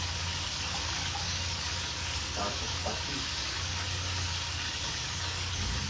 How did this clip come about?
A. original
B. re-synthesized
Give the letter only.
B